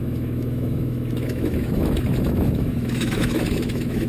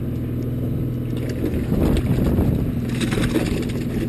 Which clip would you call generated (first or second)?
first